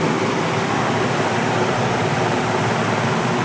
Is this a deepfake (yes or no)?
no